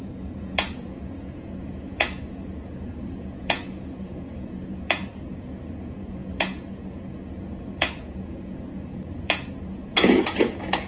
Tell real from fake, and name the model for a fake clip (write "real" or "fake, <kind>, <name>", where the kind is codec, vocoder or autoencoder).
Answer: fake, vocoder, Vocos